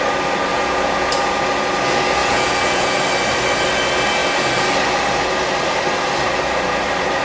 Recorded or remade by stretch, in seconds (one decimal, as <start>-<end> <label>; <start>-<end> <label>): 0.0-0.5 recorded; 0.5-1.1 remade; 1.1-2.2 recorded; 2.2-3.0 remade; 3.0-7.2 recorded